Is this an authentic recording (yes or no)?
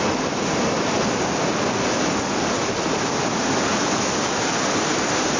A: yes